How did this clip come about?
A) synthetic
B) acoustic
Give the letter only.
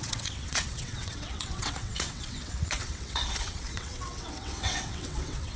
A